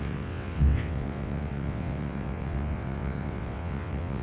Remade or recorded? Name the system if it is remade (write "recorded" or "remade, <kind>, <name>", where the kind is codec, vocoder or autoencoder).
remade, vocoder, WaveNeXt